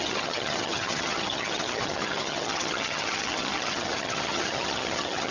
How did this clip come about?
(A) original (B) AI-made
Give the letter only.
B